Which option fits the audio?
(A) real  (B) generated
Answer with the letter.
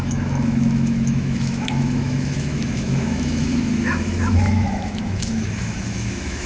B